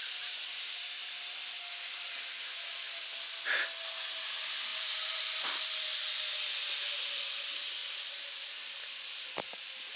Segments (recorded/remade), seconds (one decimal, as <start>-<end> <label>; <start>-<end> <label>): 0.0-4.7 recorded; 4.7-5.6 remade; 5.6-7.8 recorded; 7.8-10.0 remade

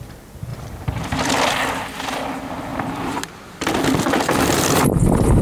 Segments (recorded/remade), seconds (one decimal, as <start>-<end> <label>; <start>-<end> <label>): 0.0-2.7 recorded; 2.7-3.7 remade; 3.7-5.4 recorded

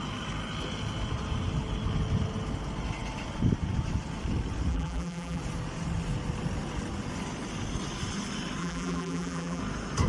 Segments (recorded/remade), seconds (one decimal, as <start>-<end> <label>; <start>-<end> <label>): 0.0-4.7 recorded; 4.7-5.4 remade; 5.4-8.6 recorded; 8.6-9.6 remade; 9.6-10.1 recorded

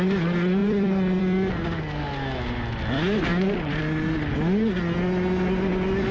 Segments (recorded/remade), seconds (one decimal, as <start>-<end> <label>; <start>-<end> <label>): 0.0-0.6 recorded; 0.6-1.2 remade; 1.2-3.3 recorded; 3.3-3.8 remade; 3.8-6.1 recorded

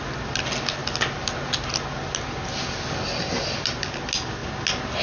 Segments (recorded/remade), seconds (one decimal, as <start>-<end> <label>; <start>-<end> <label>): 0.0-5.0 recorded